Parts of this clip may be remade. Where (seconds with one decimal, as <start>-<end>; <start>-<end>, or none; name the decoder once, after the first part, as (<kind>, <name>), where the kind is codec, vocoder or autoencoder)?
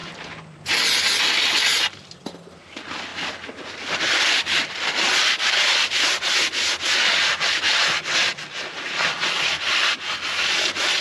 none